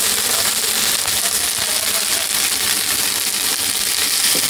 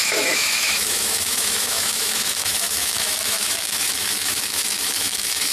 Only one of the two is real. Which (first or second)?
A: first